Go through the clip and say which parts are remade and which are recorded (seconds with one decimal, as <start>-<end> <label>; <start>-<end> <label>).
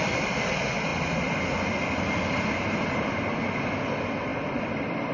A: 0.0-4.3 recorded; 4.3-5.1 remade